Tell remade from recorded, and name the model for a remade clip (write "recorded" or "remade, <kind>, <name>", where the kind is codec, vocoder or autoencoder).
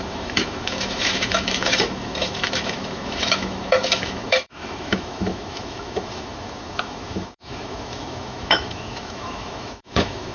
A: remade, autoencoder, DAC-VAE